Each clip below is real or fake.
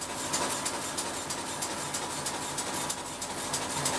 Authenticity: real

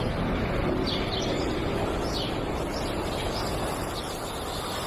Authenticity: real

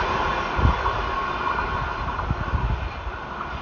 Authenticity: real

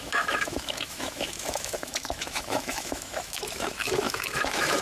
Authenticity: fake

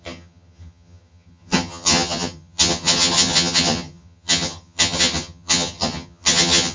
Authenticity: fake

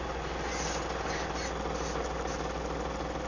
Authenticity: real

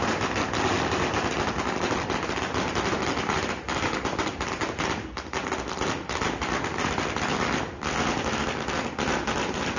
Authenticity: real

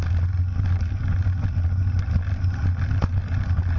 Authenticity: real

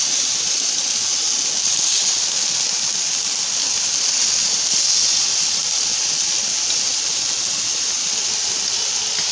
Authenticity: real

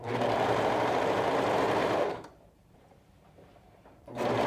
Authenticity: fake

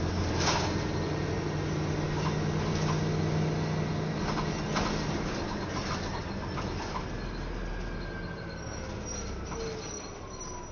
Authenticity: real